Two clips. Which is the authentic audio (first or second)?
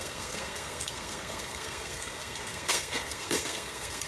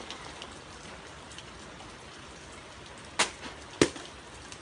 second